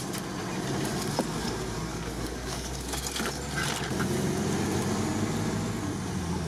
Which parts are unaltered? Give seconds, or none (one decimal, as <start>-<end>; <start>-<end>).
0.0-1.9; 3.0-6.5